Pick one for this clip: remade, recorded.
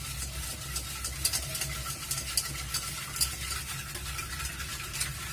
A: recorded